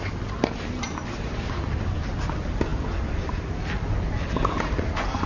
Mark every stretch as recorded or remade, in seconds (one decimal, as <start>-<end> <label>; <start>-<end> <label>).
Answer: 0.0-5.3 recorded